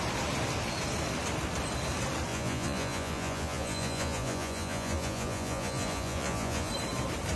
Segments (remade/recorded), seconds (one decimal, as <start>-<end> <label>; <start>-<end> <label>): 0.0-2.3 recorded; 2.3-6.7 remade; 6.7-7.4 recorded